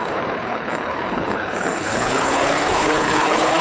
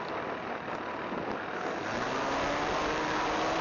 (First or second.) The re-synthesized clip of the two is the first